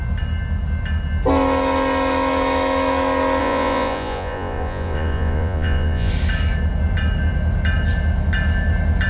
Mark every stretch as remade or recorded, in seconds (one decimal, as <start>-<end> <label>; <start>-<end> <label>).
0.0-3.4 recorded; 3.4-6.1 remade; 6.1-9.1 recorded